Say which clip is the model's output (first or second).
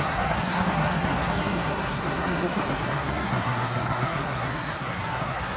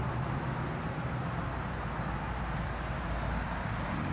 first